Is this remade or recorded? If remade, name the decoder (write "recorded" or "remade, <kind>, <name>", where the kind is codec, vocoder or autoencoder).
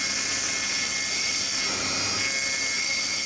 recorded